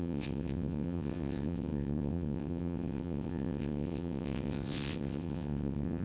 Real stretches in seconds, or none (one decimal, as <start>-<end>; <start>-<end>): none